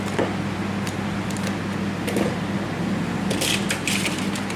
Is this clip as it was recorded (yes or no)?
yes